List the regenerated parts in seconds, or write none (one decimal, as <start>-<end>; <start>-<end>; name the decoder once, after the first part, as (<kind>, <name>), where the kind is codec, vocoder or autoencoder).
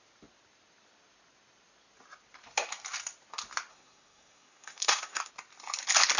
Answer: 3.7-5.3 (codec, SNAC)